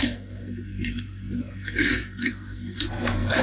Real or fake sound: fake